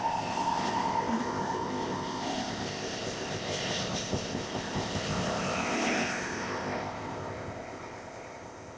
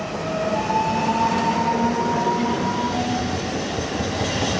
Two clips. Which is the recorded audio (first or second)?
second